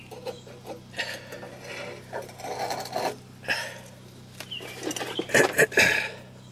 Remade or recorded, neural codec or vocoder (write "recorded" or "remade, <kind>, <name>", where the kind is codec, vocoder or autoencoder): recorded